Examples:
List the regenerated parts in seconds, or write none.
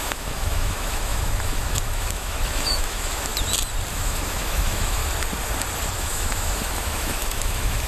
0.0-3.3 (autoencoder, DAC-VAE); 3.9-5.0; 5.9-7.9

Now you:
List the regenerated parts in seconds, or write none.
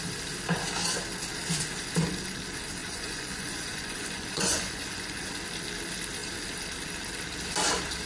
2.8-5.3 (vocoder, Vocos)